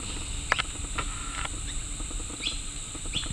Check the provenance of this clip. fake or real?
real